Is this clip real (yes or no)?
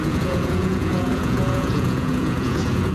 no